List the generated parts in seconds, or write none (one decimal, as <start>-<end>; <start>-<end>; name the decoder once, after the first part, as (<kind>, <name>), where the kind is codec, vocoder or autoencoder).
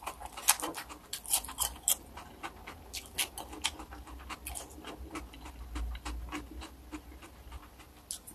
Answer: none